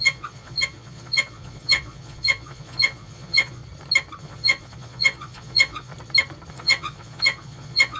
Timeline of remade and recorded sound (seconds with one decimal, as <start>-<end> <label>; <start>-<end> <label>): 0.0-3.6 remade; 3.6-4.2 recorded; 4.2-5.9 remade; 5.9-6.5 recorded; 6.5-8.0 remade